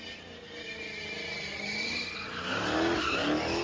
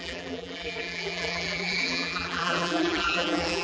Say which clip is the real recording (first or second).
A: first